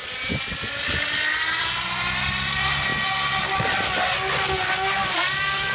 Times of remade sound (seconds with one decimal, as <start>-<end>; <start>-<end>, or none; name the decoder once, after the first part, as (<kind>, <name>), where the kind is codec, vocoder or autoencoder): 2.2-2.9 (vocoder, BigVGAN v2); 5.1-5.7